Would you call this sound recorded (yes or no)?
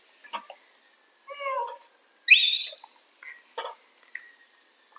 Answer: yes